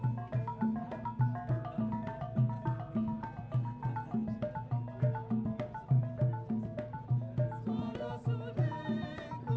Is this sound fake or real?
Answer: real